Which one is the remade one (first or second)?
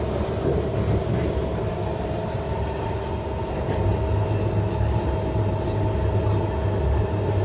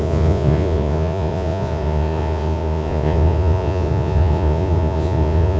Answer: second